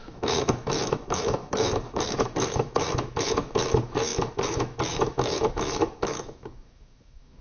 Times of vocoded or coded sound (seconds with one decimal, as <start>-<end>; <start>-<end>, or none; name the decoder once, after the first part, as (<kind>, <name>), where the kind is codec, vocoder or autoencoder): 0.0-7.4 (autoencoder, DAC-VAE)